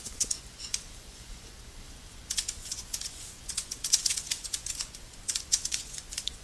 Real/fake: fake